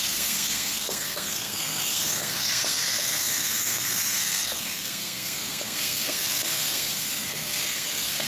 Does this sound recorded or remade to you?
remade